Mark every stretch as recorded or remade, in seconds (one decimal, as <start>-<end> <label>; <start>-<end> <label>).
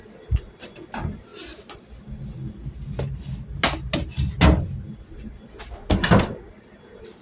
0.0-7.2 recorded